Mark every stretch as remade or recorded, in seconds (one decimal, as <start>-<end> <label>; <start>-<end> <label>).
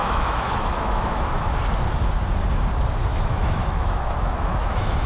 0.0-1.4 remade; 1.4-3.1 recorded; 3.1-5.1 remade